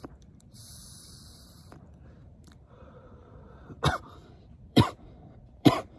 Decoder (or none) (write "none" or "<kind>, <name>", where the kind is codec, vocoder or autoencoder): vocoder, BigVGAN v2